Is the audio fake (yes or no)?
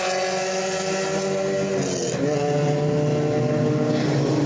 no